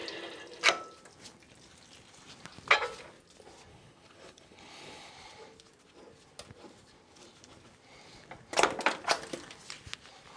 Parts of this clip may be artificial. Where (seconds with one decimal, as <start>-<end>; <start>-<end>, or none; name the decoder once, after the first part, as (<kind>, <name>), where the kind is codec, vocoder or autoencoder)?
3.7-5.1 (codec, HILCodec)